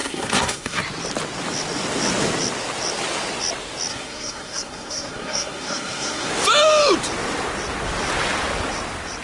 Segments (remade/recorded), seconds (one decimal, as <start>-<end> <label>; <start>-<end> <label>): 0.0-0.8 remade; 0.8-3.9 recorded; 3.9-6.3 remade; 6.3-9.2 recorded